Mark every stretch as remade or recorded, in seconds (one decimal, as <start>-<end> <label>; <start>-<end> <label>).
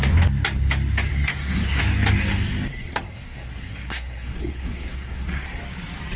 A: 0.0-1.1 recorded; 1.1-1.8 remade; 1.8-2.7 recorded; 2.7-5.6 remade; 5.6-6.2 recorded